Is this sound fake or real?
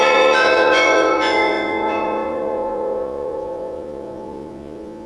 fake